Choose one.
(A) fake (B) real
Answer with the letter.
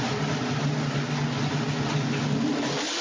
B